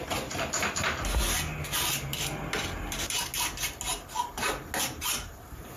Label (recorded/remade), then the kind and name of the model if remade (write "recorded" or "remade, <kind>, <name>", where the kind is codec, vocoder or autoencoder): recorded